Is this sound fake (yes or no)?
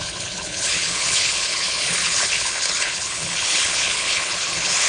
yes